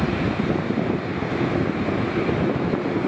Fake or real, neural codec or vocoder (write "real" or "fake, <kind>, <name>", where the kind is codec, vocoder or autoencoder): fake, vocoder, BigVGAN v2